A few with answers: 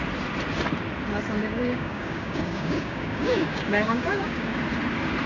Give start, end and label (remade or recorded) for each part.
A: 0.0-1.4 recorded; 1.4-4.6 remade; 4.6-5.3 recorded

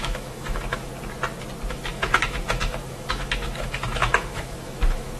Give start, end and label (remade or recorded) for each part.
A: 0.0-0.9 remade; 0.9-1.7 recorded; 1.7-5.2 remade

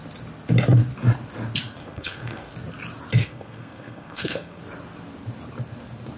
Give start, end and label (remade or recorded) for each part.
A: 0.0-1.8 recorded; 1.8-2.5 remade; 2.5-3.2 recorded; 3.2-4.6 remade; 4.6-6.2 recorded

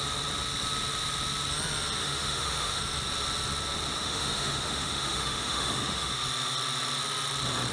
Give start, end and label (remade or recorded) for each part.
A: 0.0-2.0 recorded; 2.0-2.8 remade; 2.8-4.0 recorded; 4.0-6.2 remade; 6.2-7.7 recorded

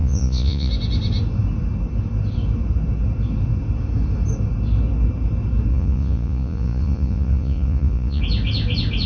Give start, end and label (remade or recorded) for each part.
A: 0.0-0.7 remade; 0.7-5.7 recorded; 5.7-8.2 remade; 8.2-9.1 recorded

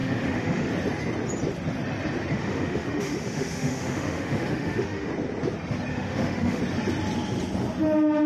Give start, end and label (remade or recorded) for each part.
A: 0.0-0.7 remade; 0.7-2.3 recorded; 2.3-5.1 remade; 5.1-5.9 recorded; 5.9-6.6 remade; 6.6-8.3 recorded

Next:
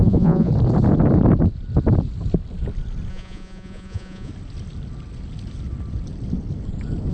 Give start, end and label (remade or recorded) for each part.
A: 0.0-0.5 remade; 0.5-3.1 recorded; 3.1-4.3 remade; 4.3-7.1 recorded